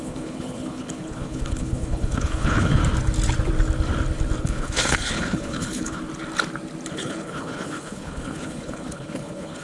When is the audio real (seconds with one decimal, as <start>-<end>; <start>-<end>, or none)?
2.8-4.4; 6.0-6.9